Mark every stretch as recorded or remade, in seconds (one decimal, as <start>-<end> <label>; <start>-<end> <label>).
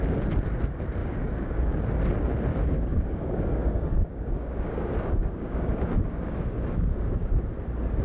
0.0-1.0 recorded; 1.0-1.8 remade; 1.8-2.5 recorded; 2.5-7.3 remade; 7.3-8.0 recorded